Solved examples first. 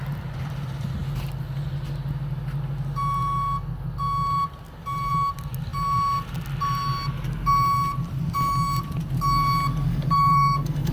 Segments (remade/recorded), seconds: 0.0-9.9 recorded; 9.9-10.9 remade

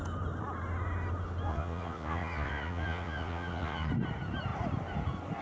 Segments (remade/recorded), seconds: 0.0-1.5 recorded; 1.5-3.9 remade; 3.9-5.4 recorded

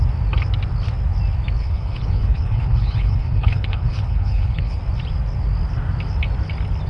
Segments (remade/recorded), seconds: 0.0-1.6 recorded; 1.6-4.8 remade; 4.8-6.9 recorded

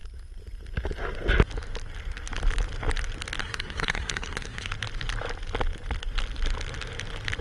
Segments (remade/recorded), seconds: 0.0-3.4 recorded; 3.4-4.7 remade; 4.7-7.4 recorded

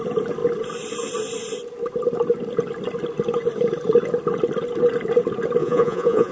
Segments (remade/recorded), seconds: 0.0-5.6 recorded; 5.6-6.3 remade